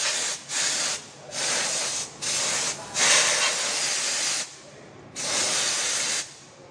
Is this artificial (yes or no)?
no